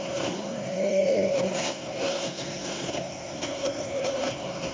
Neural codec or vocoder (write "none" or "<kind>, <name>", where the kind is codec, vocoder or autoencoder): codec, SNAC